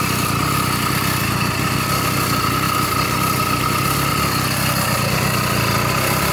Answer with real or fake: real